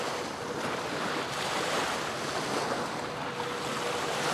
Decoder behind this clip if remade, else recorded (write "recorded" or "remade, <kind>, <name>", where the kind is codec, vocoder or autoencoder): recorded